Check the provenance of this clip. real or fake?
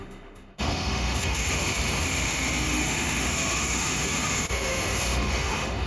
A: fake